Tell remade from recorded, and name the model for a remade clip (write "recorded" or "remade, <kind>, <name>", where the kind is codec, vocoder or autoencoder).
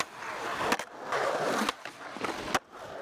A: recorded